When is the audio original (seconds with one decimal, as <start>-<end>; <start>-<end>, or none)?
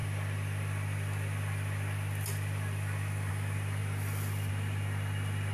0.0-5.5